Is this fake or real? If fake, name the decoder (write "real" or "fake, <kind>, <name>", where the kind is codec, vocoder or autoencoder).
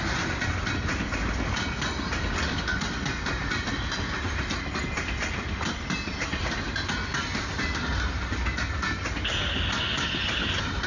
real